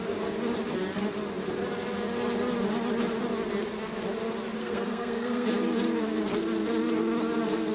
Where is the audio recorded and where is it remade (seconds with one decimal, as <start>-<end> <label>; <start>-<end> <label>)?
0.0-4.6 recorded; 4.6-5.5 remade; 5.5-7.7 recorded